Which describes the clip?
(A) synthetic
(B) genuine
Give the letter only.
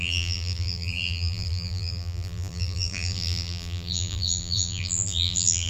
A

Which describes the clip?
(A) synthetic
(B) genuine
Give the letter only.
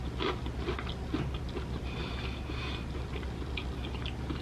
B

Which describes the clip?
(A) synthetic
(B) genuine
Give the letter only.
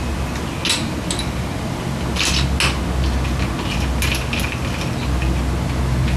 B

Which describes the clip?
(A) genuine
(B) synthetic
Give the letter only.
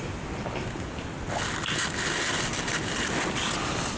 A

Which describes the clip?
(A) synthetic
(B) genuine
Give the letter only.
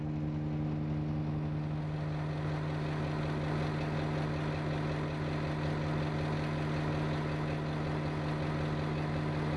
B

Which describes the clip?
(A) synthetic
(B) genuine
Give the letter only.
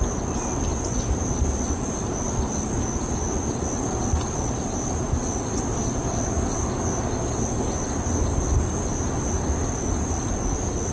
B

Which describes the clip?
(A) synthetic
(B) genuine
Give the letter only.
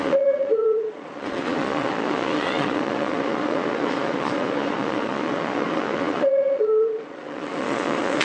A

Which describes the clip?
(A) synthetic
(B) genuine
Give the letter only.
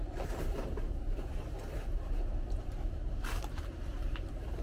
A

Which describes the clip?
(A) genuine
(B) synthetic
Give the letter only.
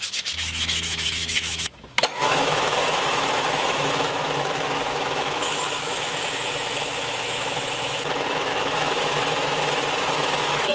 B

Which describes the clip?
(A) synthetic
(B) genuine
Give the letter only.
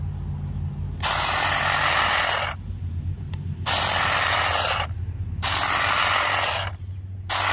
B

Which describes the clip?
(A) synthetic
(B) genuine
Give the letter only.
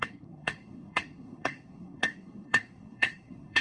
A